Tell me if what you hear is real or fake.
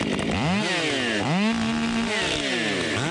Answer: real